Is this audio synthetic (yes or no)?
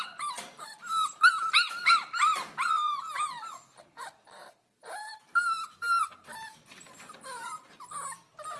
yes